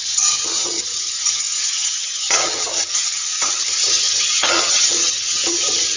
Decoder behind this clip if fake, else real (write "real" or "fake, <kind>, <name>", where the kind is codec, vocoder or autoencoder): fake, vocoder, HiFi-GAN